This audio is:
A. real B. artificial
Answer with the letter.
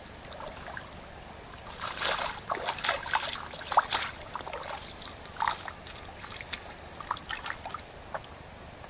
A